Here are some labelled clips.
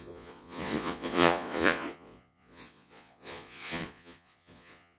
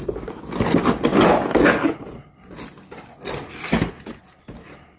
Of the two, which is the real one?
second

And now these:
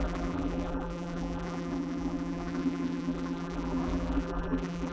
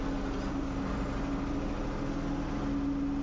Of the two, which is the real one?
second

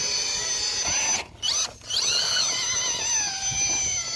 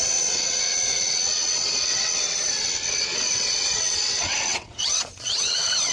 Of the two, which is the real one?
first